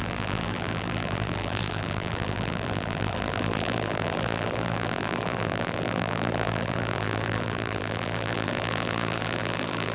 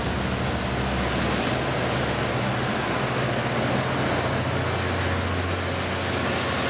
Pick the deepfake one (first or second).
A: first